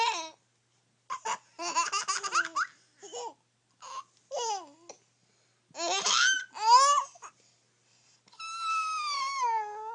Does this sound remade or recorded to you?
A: recorded